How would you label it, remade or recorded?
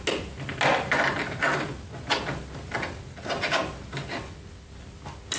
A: recorded